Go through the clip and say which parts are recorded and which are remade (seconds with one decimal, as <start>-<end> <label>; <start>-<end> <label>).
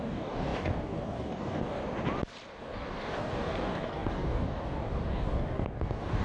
0.0-1.8 remade; 1.8-2.6 recorded; 2.6-6.2 remade